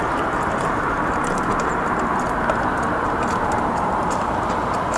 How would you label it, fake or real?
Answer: fake